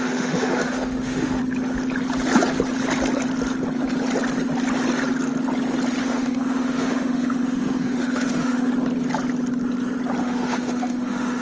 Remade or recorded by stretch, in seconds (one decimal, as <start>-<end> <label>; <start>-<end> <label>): 0.0-1.4 remade; 1.4-6.0 recorded; 6.0-8.7 remade; 8.7-10.2 recorded; 10.2-11.4 remade

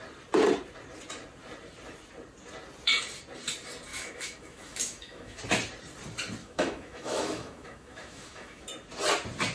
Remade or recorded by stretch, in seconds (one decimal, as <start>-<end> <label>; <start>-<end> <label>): 0.0-3.9 recorded; 3.9-5.4 remade; 5.4-6.4 recorded; 6.4-8.7 remade; 8.7-9.5 recorded

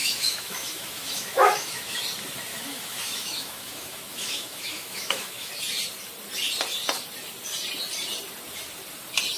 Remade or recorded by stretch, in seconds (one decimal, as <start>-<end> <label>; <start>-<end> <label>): 0.0-2.0 remade; 2.0-2.5 recorded; 2.5-5.5 remade; 5.5-9.4 recorded

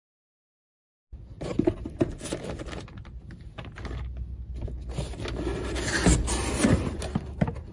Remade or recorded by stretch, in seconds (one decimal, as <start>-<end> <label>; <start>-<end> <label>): 0.0-7.7 recorded

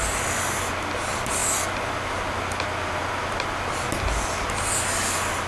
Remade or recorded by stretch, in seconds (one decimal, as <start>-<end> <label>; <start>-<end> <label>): 0.0-5.5 recorded